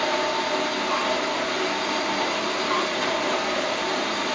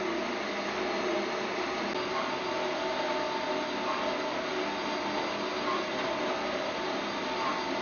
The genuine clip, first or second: second